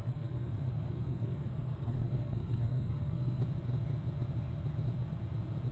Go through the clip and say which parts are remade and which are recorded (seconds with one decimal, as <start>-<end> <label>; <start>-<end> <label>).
0.0-3.4 remade; 3.4-5.7 recorded